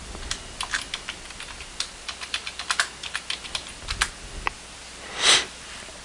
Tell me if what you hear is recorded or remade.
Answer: recorded